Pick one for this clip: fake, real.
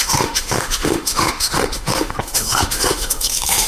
fake